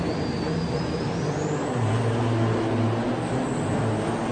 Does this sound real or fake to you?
real